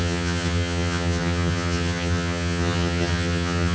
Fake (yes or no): yes